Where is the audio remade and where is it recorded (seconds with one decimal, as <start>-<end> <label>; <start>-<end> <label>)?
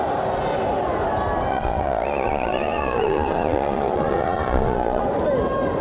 0.0-1.5 recorded; 1.5-5.0 remade; 5.0-5.8 recorded